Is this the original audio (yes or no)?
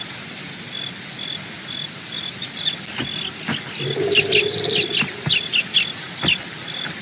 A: yes